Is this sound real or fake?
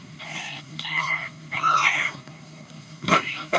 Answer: fake